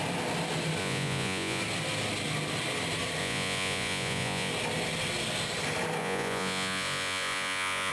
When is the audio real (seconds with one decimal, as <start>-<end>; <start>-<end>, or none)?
0.0-0.8; 1.6-3.2; 4.5-6.0

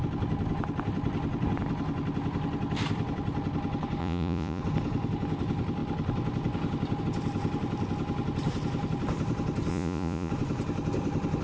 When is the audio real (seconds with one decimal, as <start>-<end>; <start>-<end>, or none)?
0.0-4.0; 4.6-9.7; 10.3-11.4

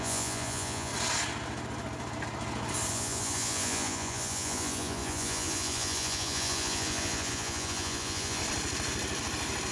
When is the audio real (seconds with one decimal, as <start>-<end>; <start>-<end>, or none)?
0.9-2.9; 8.4-9.7

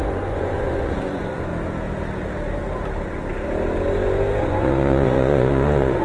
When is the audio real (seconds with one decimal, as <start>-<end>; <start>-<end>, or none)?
1.5-4.4

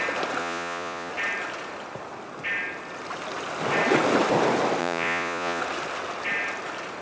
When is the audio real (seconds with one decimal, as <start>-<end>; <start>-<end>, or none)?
0.0-0.4; 1.1-4.8; 5.6-7.0

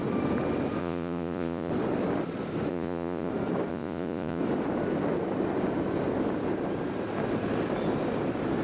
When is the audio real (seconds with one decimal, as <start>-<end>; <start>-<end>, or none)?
0.0-0.8; 1.7-2.7; 3.3-3.7; 4.4-8.6

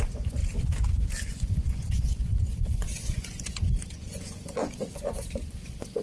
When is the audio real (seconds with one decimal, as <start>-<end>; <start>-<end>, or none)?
0.4-1.3